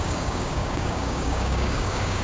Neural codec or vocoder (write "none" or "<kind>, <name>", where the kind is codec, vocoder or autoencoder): codec, DAC